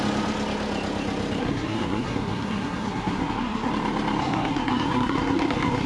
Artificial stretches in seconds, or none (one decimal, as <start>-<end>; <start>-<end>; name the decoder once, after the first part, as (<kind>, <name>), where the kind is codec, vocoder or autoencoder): 1.4-3.7 (codec, SNAC); 4.2-5.9